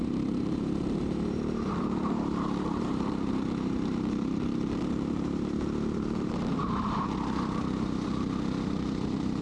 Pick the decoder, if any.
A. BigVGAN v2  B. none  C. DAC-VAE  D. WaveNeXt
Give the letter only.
A